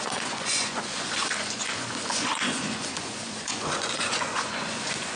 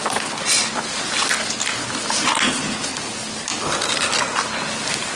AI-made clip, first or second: first